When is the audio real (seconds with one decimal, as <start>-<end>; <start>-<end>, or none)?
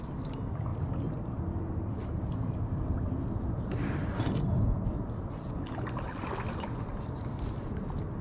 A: 0.0-8.2